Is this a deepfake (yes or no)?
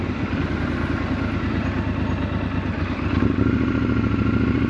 no